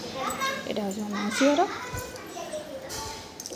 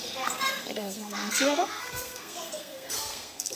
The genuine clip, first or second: first